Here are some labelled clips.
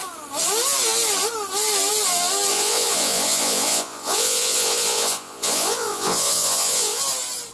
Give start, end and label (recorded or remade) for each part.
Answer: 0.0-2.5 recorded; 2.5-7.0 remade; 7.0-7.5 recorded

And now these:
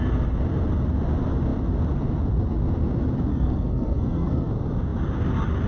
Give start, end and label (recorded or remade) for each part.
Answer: 0.0-3.3 recorded; 3.3-4.5 remade; 4.5-5.7 recorded

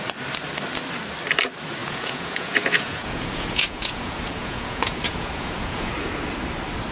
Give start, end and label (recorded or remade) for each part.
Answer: 0.0-1.8 recorded; 1.8-5.9 remade; 5.9-6.9 recorded

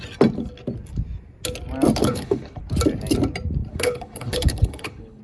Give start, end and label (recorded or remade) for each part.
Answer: 0.0-2.0 recorded; 2.0-2.6 remade; 2.6-3.7 recorded; 3.7-5.2 remade

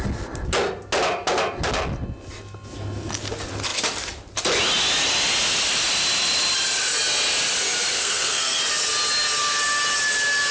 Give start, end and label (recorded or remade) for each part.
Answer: 0.0-7.9 recorded; 7.9-8.6 remade; 8.6-10.5 recorded

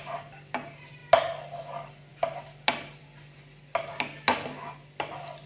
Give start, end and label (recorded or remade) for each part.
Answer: 0.0-5.5 recorded

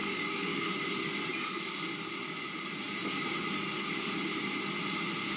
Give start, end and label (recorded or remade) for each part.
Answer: 0.0-0.7 remade; 0.7-5.4 recorded